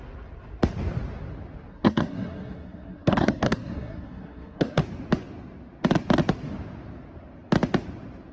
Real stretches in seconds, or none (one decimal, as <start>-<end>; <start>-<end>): 0.0-1.7; 4.8-8.3